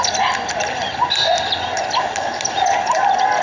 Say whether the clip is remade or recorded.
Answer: recorded